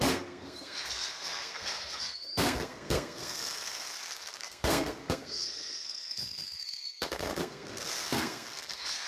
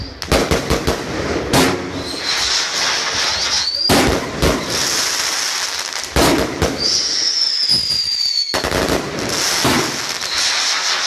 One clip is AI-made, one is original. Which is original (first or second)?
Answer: second